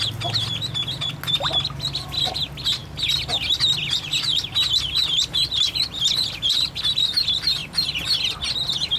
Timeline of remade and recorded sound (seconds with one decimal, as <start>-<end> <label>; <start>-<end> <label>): 0.0-9.0 recorded